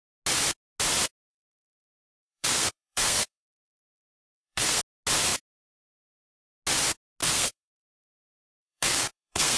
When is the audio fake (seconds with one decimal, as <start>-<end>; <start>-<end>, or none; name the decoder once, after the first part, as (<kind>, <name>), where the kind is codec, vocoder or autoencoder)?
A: 1.3-4.8 (codec, SNAC); 7.2-7.9; 8.6-9.6